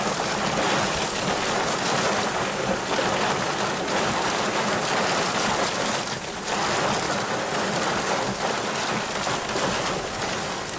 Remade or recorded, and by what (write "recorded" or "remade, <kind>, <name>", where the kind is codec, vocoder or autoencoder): recorded